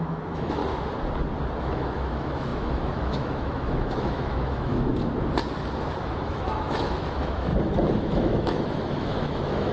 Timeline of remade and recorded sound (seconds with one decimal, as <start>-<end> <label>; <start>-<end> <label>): 0.0-0.6 remade; 0.6-1.6 recorded; 1.6-4.9 remade; 4.9-6.0 recorded; 6.0-7.5 remade; 7.5-8.0 recorded; 8.0-9.7 remade